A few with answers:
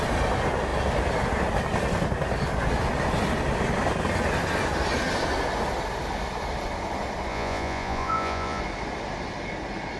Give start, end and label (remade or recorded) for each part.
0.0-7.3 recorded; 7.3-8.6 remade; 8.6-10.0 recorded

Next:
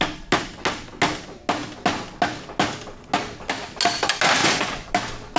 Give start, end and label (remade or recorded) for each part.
0.0-4.4 recorded; 4.4-4.9 remade; 4.9-5.4 recorded

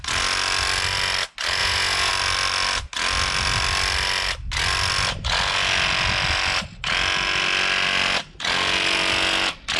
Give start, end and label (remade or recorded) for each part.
0.0-1.6 recorded; 1.6-2.1 remade; 2.1-9.8 recorded

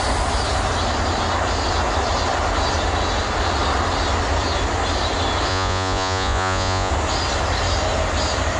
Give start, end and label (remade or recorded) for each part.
0.0-5.5 recorded; 5.5-6.9 remade; 6.9-8.6 recorded

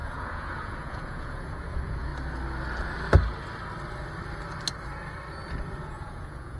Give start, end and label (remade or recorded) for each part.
0.0-2.1 remade; 2.1-5.9 recorded; 5.9-6.6 remade